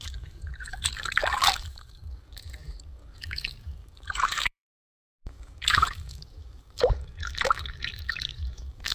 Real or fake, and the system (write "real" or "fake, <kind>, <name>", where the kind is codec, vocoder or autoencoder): fake, codec, DAC